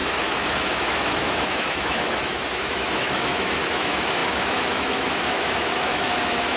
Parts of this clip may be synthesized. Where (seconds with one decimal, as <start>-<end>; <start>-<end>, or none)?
0.0-6.6